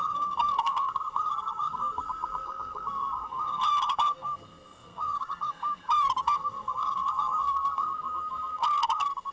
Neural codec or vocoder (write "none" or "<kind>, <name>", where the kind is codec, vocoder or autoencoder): codec, SNAC